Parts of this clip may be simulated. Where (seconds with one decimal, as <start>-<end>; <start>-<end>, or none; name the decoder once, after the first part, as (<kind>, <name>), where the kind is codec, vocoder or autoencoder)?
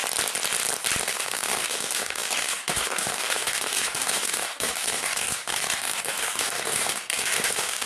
1.0-7.9 (codec, DAC)